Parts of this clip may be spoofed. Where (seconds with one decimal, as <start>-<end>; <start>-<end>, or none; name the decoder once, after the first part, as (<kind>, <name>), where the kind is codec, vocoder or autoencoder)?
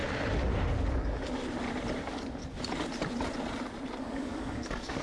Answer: 0.9-1.4 (codec, DAC); 2.0-2.4; 4.0-5.0